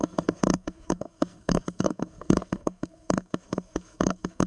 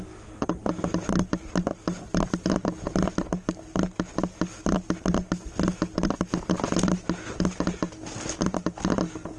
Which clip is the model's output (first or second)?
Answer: first